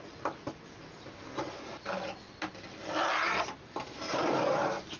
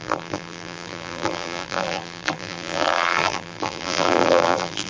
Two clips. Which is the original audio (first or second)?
first